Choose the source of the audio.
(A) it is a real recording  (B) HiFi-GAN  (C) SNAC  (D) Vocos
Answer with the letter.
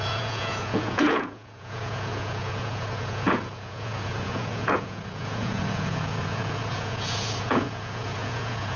D